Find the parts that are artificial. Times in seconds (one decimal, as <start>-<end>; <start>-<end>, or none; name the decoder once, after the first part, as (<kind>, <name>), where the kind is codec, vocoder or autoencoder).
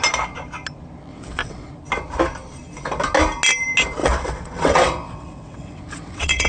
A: 1.1-1.7 (vocoder, WaveNeXt); 4.0-6.5